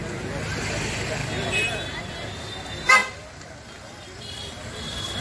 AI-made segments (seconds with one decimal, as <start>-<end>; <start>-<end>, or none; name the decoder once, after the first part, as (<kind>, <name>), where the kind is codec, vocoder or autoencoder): none